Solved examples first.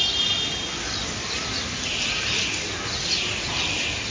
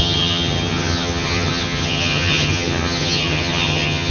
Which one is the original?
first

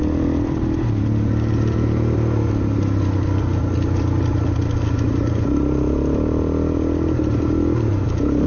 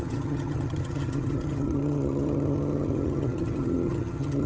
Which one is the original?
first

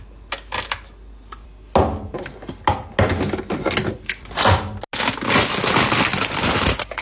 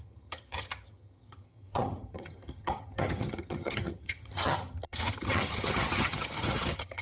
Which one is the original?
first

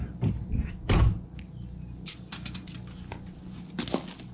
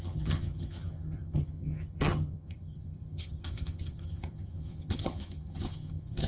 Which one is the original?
first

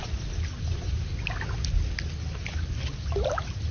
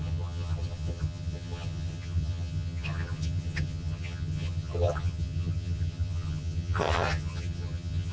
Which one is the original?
first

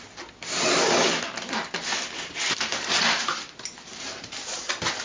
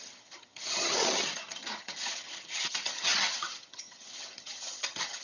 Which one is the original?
first